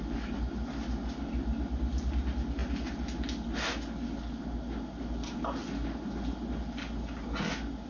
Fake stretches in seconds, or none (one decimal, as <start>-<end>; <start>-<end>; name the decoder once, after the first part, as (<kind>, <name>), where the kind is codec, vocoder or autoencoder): none